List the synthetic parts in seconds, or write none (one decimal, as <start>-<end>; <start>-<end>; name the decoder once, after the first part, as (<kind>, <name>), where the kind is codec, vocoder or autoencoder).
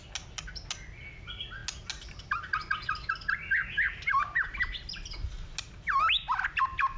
none